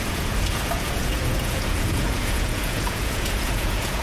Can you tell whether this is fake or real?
fake